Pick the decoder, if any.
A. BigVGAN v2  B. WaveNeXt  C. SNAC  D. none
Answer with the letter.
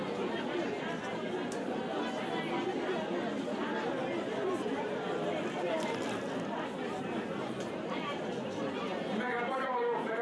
D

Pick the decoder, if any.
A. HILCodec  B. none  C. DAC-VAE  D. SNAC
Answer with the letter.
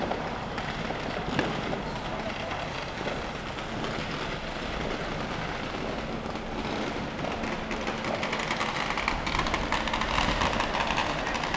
B